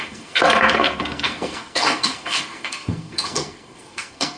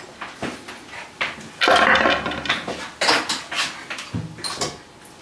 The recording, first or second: second